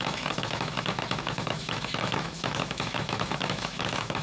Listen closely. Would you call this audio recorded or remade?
remade